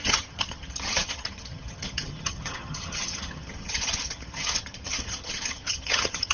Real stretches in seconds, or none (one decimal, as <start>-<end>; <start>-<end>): none